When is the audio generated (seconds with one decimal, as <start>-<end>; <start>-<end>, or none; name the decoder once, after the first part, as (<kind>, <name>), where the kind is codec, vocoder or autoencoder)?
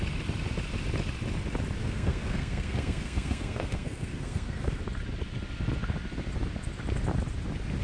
1.8-4.8 (codec, SNAC)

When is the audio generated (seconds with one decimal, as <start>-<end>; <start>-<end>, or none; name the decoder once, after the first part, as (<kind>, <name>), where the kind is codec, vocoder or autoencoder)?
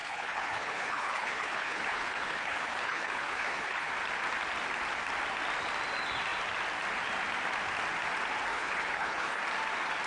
0.0-3.9 (codec, HILCodec); 8.5-9.4